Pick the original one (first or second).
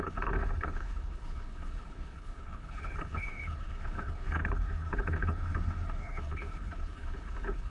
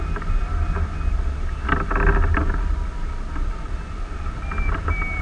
second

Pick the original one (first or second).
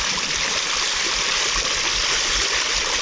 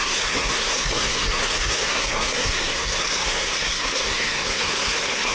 first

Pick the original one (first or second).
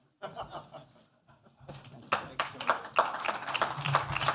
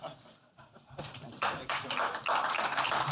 first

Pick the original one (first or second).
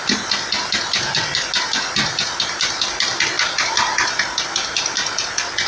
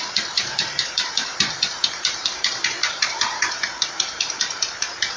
first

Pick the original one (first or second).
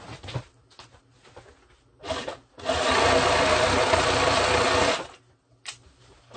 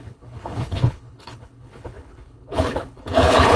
first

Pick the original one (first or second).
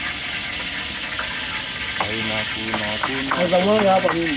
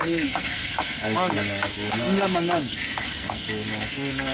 first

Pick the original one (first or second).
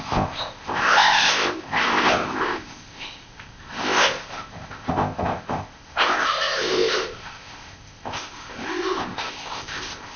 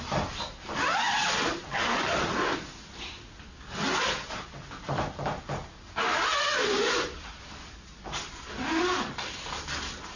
second